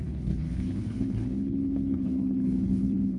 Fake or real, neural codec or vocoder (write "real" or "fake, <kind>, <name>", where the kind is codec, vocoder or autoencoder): fake, codec, HILCodec